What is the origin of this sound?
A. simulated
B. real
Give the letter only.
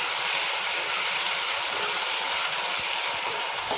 A